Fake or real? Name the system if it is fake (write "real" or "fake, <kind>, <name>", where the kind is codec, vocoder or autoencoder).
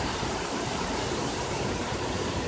fake, vocoder, BigVGAN v2